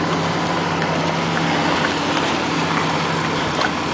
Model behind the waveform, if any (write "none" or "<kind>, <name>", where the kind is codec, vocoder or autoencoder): none